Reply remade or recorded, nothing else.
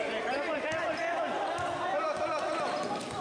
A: recorded